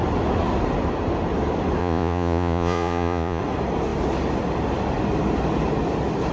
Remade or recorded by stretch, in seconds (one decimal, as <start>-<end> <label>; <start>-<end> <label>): 0.0-1.8 recorded; 1.8-3.4 remade; 3.4-6.3 recorded